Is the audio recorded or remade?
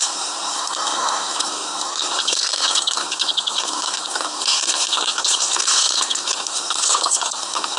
remade